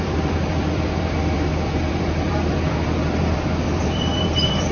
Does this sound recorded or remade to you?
remade